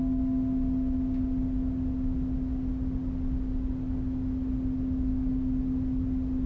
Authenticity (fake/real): real